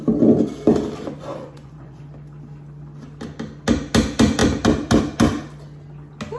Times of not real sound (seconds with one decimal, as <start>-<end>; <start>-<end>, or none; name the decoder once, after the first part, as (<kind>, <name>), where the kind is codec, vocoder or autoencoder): 1.3-2.0 (vocoder, Vocos)